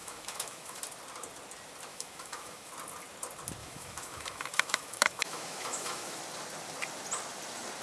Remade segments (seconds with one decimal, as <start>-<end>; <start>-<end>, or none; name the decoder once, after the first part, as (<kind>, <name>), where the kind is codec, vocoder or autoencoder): 0.0-0.8 (autoencoder, DAC-VAE); 1.9-2.7; 3.6-6.2